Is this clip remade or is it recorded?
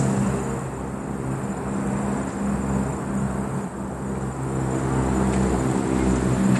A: recorded